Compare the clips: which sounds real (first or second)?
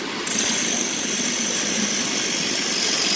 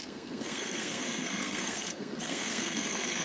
first